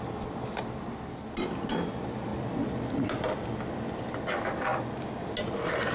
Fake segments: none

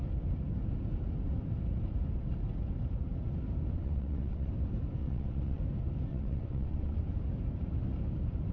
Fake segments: 3.7-4.5 (vocoder, WaveNeXt); 5.0-5.6; 6.1-7.0

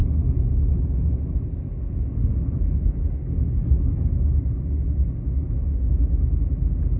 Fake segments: none